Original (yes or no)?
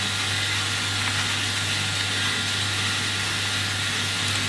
yes